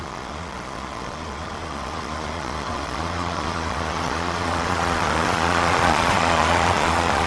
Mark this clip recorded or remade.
remade